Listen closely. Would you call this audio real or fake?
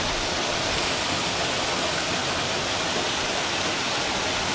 real